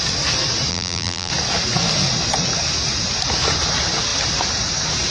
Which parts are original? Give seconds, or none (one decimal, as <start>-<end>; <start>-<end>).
0.0-0.7; 1.3-5.1